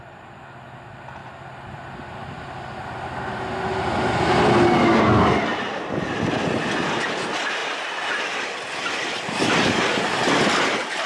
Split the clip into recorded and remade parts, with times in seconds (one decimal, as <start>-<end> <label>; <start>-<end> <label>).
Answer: 0.0-11.1 recorded